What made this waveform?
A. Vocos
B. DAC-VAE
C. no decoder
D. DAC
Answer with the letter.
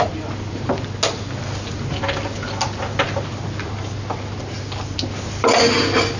C